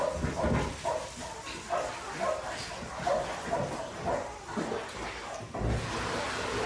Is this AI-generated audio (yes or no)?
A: no